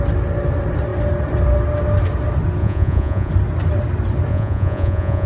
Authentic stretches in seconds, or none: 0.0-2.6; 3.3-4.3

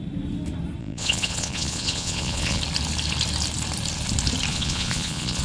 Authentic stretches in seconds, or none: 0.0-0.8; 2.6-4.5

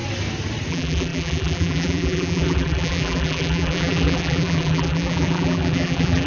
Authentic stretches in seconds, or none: 0.0-0.7